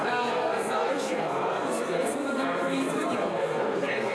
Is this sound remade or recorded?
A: remade